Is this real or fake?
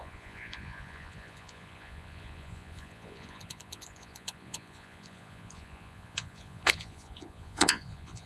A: fake